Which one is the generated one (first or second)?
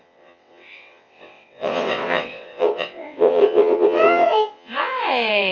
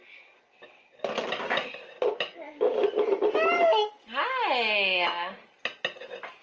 first